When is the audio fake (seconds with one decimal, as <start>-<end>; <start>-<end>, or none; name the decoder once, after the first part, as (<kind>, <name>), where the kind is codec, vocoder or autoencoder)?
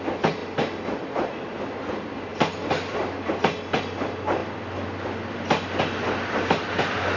none